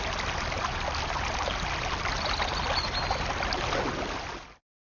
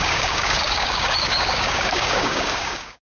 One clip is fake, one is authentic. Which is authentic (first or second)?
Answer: first